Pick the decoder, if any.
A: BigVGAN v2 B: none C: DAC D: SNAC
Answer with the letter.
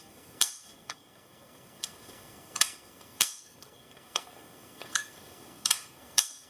D